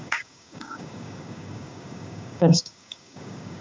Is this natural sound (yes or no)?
no